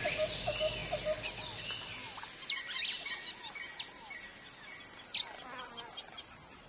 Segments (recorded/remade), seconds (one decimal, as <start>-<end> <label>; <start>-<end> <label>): 0.0-6.7 recorded